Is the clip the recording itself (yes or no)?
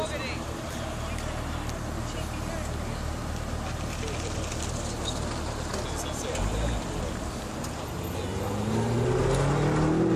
yes